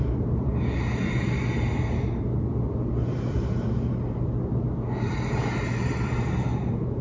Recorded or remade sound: recorded